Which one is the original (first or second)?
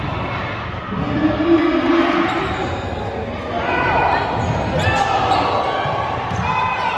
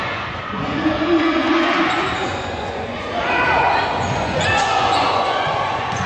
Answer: first